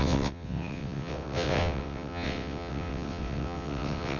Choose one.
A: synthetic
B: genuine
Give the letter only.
A